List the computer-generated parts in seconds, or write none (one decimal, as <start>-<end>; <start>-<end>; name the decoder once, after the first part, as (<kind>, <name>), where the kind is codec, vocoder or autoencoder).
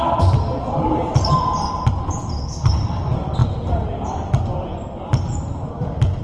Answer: 0.5-1.9 (vocoder, BigVGAN v2); 3.4-5.8